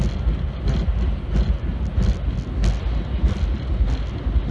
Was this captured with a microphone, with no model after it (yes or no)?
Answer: yes